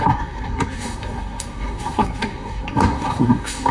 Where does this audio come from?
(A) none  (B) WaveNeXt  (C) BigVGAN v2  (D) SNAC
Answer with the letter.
D